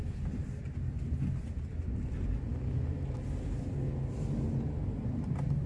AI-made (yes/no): no